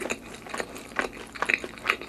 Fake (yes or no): no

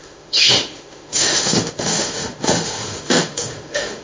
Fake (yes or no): yes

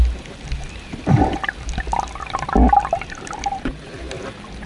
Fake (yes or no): no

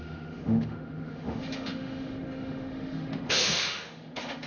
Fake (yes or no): yes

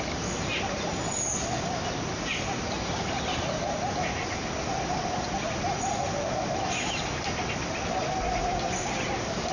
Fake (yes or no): no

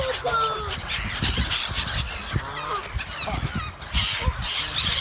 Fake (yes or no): no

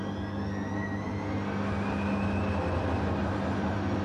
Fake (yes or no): no